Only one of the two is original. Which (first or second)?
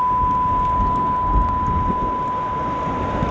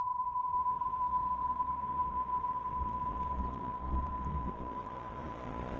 first